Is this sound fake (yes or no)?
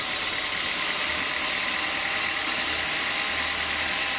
no